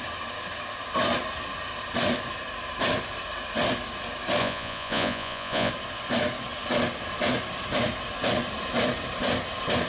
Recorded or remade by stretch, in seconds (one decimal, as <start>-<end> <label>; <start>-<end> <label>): 0.0-4.4 recorded; 4.4-5.7 remade; 5.7-9.9 recorded